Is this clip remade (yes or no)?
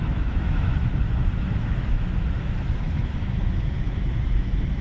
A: yes